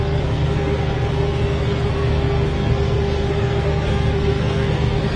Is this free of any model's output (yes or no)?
no